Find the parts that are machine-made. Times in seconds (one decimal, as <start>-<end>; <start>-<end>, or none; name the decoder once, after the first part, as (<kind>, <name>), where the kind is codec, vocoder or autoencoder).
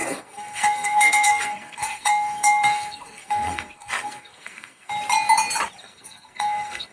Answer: 0.0-4.9 (codec, SNAC); 5.8-6.9